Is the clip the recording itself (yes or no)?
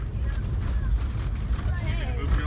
yes